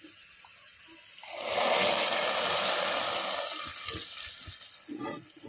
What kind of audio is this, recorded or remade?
recorded